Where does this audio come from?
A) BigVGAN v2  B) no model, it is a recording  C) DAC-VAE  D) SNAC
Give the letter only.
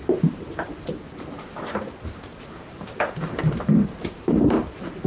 A